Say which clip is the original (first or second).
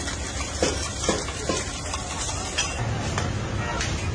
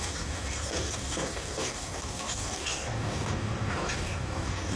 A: first